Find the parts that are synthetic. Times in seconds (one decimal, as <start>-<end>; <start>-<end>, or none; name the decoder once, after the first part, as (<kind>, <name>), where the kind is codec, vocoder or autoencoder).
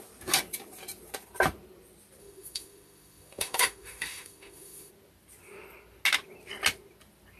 2.2-4.9 (autoencoder, DAC-VAE)